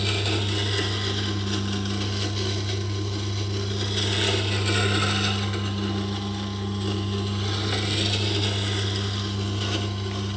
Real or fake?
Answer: real